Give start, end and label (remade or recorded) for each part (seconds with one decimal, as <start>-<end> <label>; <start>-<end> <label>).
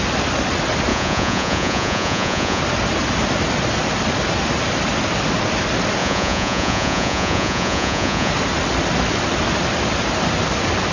0.0-0.9 recorded; 0.9-2.6 remade; 2.6-6.0 recorded; 6.0-8.3 remade; 8.3-10.9 recorded